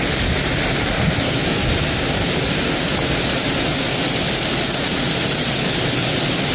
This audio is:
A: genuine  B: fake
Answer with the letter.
A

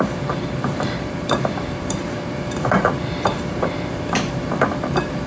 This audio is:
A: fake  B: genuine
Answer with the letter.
A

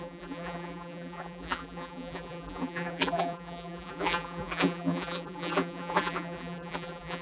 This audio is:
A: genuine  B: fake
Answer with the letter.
B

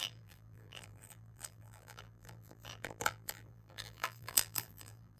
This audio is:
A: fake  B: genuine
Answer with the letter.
A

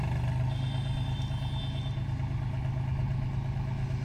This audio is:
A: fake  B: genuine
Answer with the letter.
B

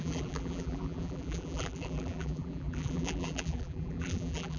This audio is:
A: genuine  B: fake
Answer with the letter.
B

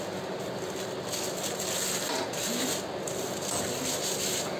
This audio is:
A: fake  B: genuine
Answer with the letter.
B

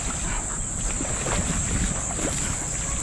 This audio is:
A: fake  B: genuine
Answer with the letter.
B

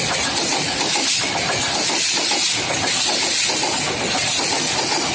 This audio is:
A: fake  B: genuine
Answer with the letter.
B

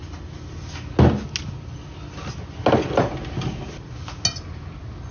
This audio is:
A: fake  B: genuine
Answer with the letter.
B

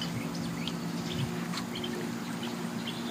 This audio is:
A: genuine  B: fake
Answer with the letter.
A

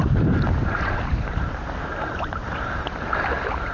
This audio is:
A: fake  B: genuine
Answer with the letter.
A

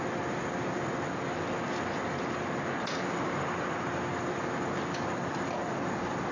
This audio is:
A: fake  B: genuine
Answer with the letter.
B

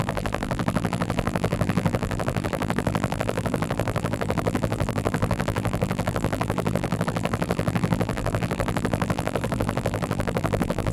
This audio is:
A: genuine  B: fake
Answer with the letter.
B